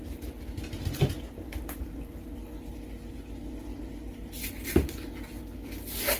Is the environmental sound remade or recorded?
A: recorded